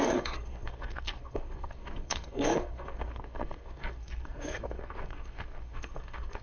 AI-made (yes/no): yes